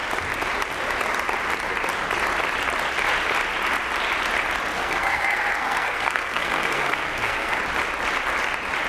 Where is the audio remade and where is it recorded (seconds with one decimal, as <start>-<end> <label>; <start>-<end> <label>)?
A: 0.0-4.7 recorded; 4.7-7.6 remade; 7.6-8.9 recorded